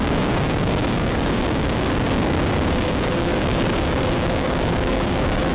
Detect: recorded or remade remade